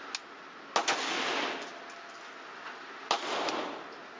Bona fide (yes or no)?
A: yes